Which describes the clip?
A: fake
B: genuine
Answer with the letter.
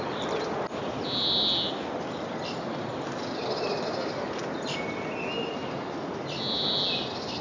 B